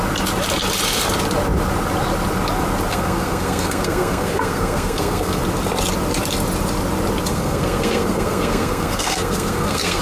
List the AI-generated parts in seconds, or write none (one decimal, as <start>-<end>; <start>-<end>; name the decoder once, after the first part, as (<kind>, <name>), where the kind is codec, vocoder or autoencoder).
2.9-5.4 (codec, SNAC); 7.3-10.0